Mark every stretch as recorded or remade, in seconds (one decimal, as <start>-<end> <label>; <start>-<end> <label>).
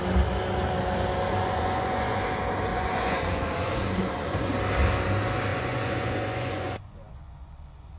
0.0-1.4 recorded; 1.4-2.2 remade; 2.2-2.7 recorded; 2.7-4.5 remade; 4.5-5.5 recorded; 5.5-8.0 remade